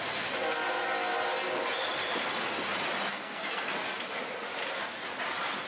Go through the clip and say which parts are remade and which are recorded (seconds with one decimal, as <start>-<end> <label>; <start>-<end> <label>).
0.0-3.1 recorded; 3.1-3.7 remade; 3.7-5.7 recorded